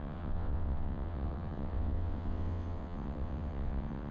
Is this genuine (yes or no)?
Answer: no